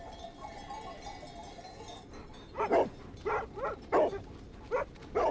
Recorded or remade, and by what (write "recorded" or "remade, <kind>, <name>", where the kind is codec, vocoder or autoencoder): recorded